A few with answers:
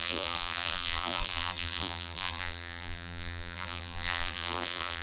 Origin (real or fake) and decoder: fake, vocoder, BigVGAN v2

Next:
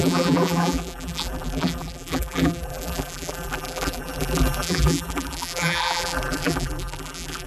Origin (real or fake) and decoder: fake, vocoder, BigVGAN v2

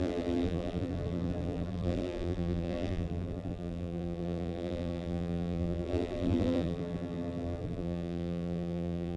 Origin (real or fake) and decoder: fake, vocoder, BigVGAN v2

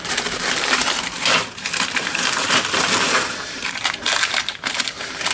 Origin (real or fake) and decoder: fake, vocoder, BigVGAN v2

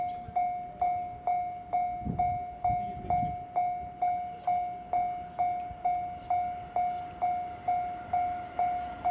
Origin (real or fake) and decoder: real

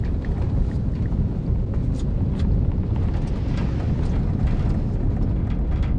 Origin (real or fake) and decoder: real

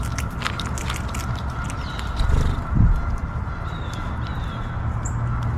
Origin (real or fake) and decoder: real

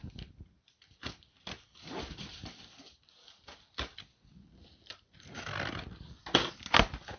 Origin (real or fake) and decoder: fake, vocoder, BigVGAN v2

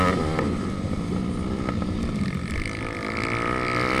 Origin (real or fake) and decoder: real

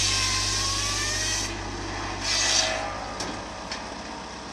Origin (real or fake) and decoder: real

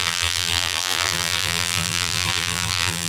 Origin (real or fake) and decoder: fake, vocoder, BigVGAN v2